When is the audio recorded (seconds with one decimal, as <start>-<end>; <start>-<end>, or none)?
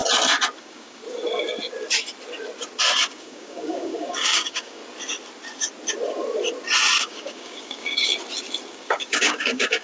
0.0-0.6; 1.0-3.1; 4.8-7.0; 8.1-8.7